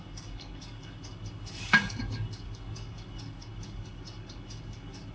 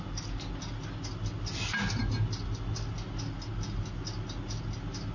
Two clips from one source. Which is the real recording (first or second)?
second